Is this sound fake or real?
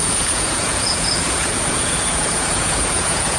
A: fake